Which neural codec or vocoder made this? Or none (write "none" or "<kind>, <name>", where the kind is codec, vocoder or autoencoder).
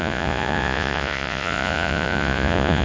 vocoder, Vocos